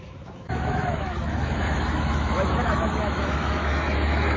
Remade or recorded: remade